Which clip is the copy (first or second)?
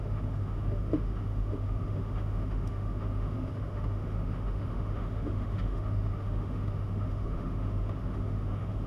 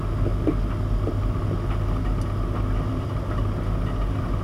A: first